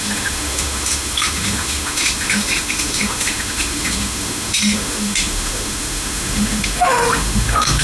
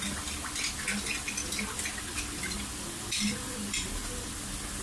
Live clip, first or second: second